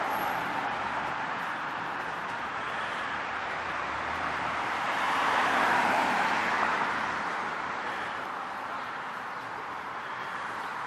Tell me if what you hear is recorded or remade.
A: remade